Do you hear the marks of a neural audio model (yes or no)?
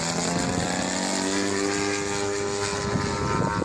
no